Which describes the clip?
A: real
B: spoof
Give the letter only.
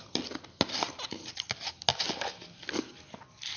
A